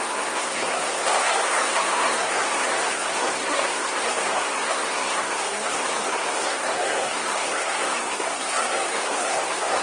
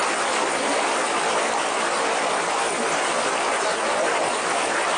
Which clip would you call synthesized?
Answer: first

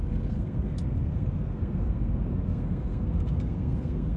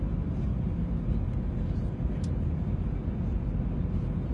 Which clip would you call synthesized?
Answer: first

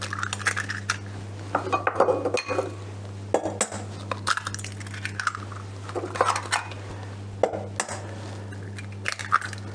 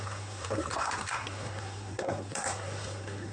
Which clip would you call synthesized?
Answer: second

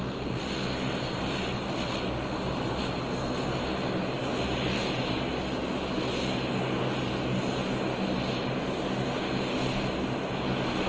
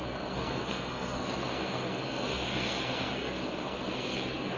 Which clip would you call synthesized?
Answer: second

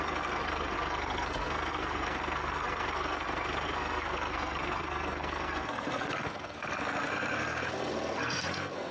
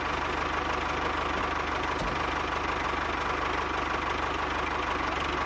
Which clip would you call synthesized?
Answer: first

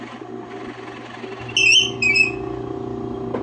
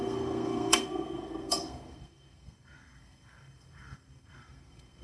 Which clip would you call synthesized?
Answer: second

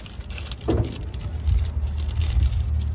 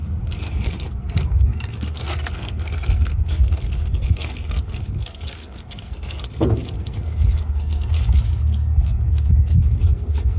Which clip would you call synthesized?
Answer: second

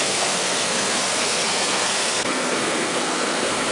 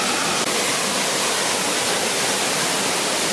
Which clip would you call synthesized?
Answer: first